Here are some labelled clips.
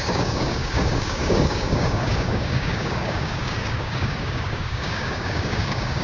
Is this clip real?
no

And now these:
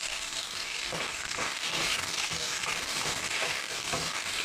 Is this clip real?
no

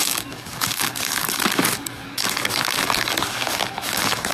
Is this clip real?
no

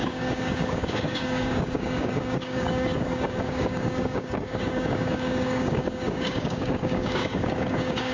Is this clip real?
no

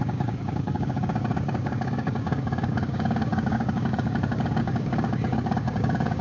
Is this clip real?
no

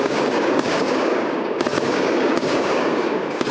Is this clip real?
no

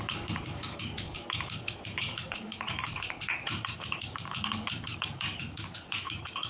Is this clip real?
no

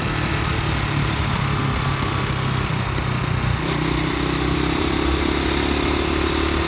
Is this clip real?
yes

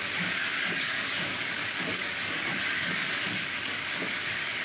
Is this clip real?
no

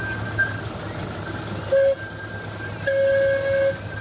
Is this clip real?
yes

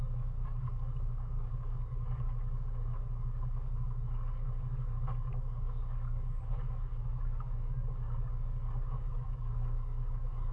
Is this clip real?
no